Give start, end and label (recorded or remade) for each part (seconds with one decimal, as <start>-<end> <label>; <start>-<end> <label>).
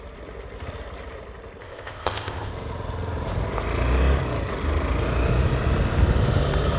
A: 0.0-1.6 recorded; 1.6-2.5 remade; 2.5-6.8 recorded